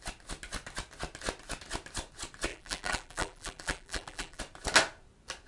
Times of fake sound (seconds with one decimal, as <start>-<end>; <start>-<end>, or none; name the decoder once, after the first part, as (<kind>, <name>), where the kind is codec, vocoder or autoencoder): 2.5-4.4 (vocoder, BigVGAN v2)